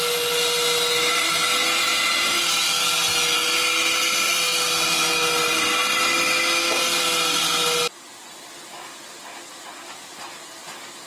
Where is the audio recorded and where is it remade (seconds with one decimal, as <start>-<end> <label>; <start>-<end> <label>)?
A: 0.0-1.9 recorded; 1.9-2.4 remade; 2.4-11.1 recorded

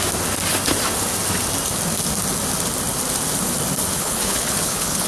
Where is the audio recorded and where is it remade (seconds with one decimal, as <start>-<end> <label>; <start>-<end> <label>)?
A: 0.0-3.9 recorded; 3.9-5.1 remade

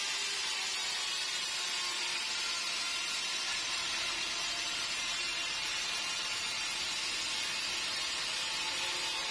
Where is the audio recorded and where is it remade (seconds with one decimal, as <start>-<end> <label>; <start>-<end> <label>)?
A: 0.0-3.5 recorded; 3.5-6.9 remade; 6.9-9.3 recorded

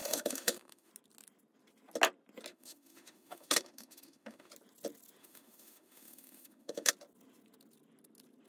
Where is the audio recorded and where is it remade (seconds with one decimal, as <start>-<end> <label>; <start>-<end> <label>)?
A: 0.0-0.9 remade; 0.9-2.5 recorded; 2.5-4.5 remade; 4.5-5.2 recorded; 5.2-6.9 remade; 6.9-8.5 recorded

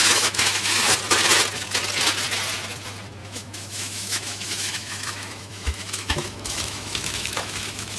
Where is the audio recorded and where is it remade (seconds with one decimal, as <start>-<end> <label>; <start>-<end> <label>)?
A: 0.0-0.9 remade; 0.9-3.2 recorded; 3.2-8.0 remade

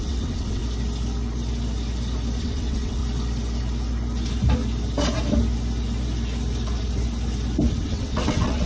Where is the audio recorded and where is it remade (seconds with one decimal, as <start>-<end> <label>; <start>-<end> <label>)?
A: 0.0-0.6 remade; 0.6-2.4 recorded; 2.4-3.0 remade; 3.0-7.7 recorded; 7.7-8.7 remade